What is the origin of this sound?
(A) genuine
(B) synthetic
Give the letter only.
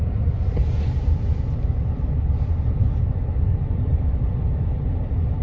B